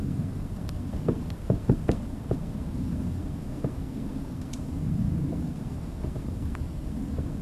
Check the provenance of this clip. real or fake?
fake